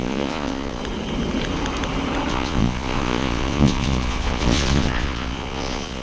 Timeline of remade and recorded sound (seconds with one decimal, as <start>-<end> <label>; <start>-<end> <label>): 0.0-0.8 remade; 0.8-2.3 recorded; 2.3-6.0 remade